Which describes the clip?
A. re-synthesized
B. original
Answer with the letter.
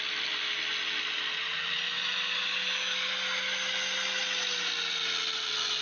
B